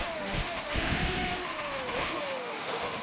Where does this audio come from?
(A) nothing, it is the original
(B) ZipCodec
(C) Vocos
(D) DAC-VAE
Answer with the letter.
D